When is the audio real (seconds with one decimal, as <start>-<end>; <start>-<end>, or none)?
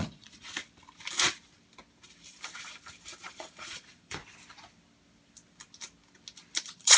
0.5-3.2; 4.2-6.6